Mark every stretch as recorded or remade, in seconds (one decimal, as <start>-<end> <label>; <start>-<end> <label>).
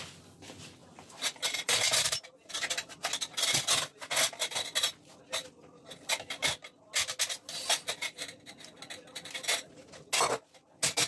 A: 0.0-0.8 recorded; 0.8-2.2 remade; 2.2-11.1 recorded